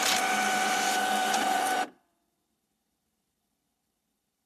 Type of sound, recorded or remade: remade